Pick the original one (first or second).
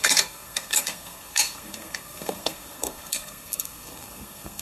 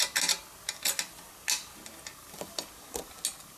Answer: second